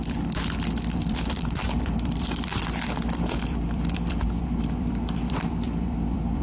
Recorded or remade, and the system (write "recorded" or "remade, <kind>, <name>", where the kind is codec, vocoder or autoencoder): remade, vocoder, BigVGAN v2